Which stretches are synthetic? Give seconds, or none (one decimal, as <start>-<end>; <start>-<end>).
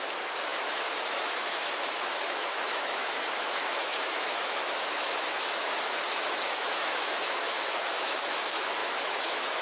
0.0-9.6